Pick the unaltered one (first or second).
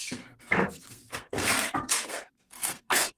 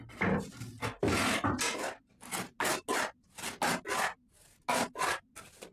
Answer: second